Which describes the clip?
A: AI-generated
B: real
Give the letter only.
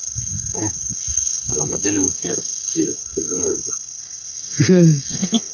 A